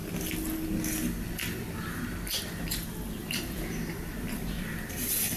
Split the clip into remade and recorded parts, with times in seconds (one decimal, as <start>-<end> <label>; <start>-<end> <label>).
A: 0.0-3.2 recorded; 3.2-5.4 remade